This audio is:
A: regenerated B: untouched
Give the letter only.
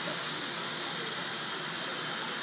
B